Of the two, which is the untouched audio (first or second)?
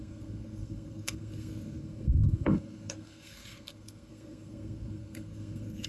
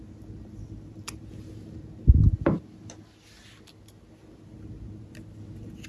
second